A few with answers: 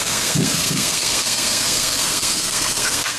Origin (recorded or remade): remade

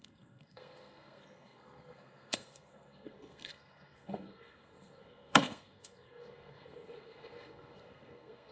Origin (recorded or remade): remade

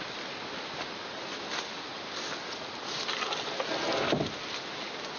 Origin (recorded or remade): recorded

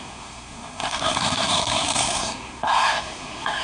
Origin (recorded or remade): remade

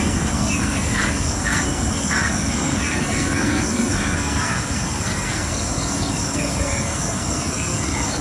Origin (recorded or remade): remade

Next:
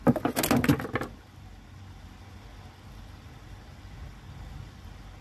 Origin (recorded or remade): recorded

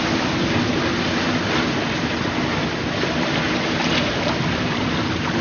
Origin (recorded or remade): recorded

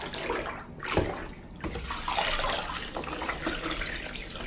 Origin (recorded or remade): recorded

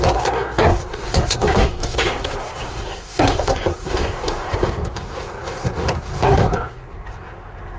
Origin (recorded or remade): remade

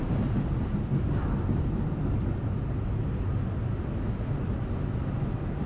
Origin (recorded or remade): recorded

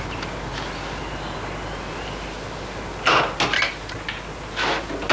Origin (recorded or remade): recorded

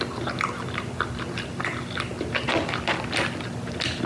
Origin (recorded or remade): recorded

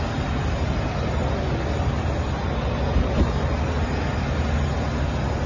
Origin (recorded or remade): recorded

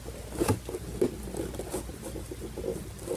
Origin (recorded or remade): recorded